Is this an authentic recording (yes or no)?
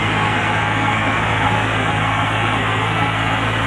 no